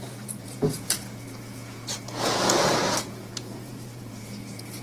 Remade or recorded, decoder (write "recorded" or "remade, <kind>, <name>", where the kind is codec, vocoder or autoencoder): remade, vocoder, Vocos